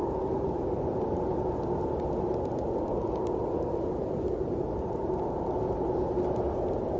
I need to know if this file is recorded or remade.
recorded